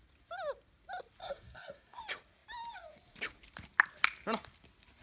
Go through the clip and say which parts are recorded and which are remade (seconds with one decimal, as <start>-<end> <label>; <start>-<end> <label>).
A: 0.0-1.2 recorded; 1.2-2.0 remade; 2.0-5.0 recorded